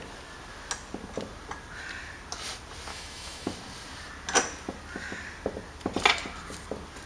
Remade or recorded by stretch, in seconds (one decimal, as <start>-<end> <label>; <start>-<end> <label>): 0.0-2.9 recorded; 2.9-3.5 remade; 3.5-7.1 recorded